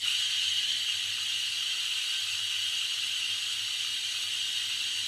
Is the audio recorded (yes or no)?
no